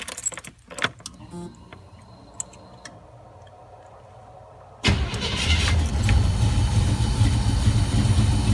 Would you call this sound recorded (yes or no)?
yes